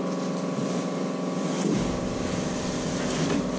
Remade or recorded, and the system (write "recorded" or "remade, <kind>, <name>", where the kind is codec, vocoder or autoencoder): recorded